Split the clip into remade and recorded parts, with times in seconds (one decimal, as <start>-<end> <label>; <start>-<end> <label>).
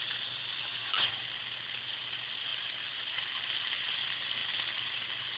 0.0-0.7 recorded; 0.7-1.2 remade; 1.2-5.4 recorded